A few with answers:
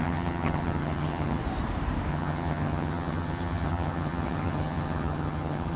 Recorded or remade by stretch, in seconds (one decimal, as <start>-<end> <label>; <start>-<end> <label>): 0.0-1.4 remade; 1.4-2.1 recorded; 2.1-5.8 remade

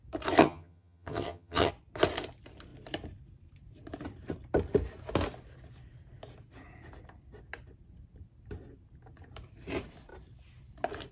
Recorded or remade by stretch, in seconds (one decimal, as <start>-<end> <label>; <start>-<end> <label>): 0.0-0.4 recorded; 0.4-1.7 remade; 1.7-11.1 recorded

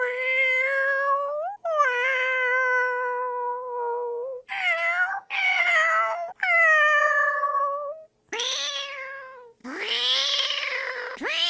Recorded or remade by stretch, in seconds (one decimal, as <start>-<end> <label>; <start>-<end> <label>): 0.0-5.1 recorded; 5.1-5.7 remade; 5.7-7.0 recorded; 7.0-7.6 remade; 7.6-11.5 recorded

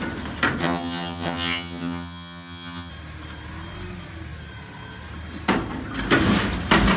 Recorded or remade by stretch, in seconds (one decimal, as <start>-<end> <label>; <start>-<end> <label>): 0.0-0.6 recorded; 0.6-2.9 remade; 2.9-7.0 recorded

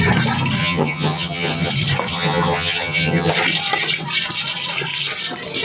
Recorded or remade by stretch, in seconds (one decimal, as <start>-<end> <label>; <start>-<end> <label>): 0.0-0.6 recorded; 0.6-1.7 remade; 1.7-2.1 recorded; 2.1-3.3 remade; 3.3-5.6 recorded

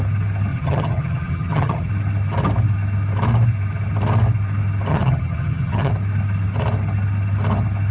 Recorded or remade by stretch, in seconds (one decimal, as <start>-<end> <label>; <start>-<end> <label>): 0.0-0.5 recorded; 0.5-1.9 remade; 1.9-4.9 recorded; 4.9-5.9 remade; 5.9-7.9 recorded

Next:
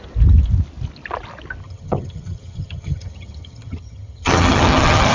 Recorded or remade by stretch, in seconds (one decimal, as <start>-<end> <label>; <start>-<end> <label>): 0.0-1.6 recorded; 1.6-5.1 remade